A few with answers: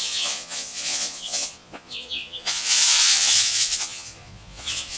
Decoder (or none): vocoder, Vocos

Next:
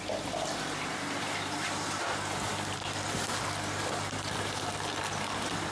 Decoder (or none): none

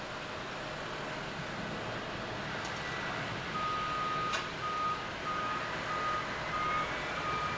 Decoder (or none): none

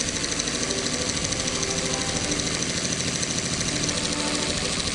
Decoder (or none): none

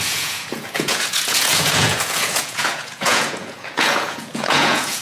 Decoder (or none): vocoder, Vocos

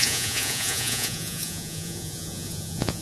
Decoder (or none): vocoder, Vocos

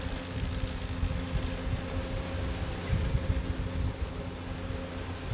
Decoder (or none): none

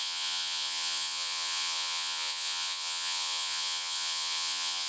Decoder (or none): vocoder, Vocos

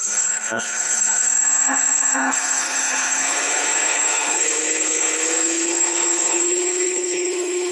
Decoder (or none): codec, HILCodec